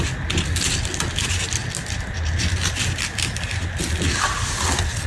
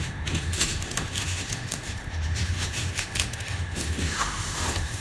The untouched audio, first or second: first